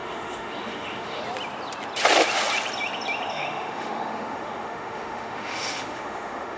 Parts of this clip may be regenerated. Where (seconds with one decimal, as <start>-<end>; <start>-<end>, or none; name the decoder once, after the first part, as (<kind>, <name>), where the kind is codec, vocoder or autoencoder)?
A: 0.0-1.2 (autoencoder, DAC-VAE); 3.3-6.6